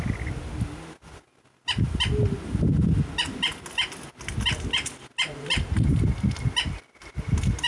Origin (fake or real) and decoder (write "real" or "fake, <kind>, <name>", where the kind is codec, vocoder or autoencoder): real